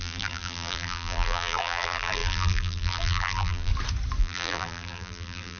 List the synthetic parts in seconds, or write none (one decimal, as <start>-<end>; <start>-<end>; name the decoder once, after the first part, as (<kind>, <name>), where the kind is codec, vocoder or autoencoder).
0.0-3.7 (vocoder, BigVGAN v2); 4.2-5.6